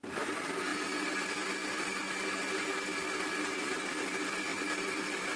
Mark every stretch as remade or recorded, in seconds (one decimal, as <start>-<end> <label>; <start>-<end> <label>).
0.0-5.4 recorded